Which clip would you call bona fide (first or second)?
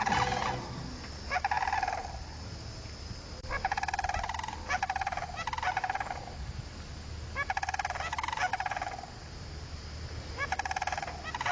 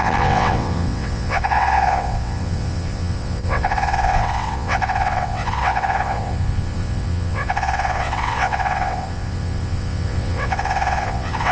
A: first